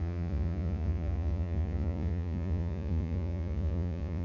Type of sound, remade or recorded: remade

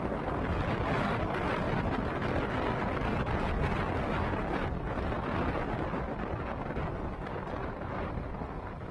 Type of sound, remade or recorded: recorded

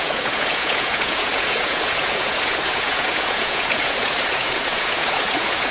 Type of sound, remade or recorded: remade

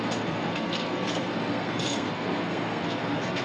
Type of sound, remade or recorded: remade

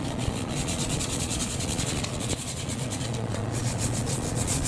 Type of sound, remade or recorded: remade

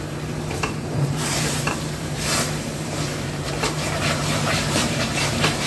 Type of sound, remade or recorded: remade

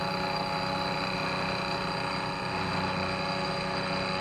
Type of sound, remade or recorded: recorded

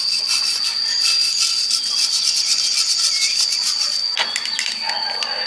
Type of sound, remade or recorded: recorded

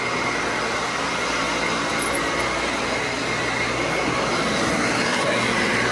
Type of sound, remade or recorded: recorded